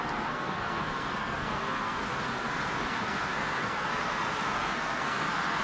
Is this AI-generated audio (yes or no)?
yes